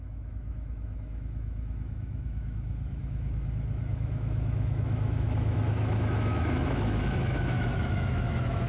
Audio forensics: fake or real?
fake